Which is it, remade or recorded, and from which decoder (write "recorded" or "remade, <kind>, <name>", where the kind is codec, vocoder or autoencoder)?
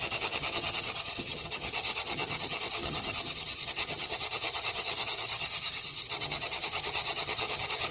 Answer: remade, vocoder, HiFi-GAN